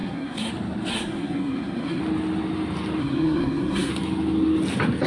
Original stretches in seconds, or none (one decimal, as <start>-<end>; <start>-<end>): 0.5-0.9; 2.0-3.0; 3.9-5.1